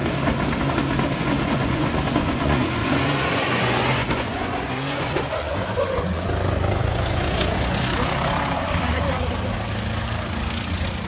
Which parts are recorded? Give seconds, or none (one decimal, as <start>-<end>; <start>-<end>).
0.0-1.2; 7.9-11.1